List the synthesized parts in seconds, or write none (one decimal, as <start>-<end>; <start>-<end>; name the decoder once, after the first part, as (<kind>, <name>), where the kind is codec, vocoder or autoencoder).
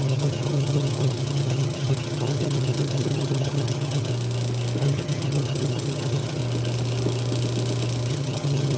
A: 0.0-4.1 (vocoder, HiFi-GAN); 4.8-6.4; 8.1-8.8